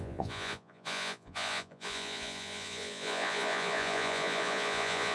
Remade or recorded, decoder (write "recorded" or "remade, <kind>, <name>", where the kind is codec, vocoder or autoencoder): remade, vocoder, Vocos